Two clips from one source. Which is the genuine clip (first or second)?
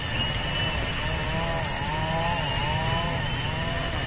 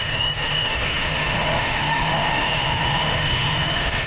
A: first